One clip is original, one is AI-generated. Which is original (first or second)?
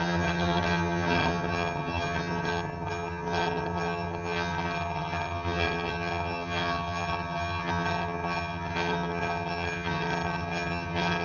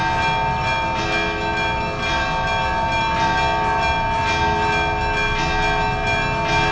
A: second